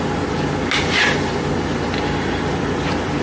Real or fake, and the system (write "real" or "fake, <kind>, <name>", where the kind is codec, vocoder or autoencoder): real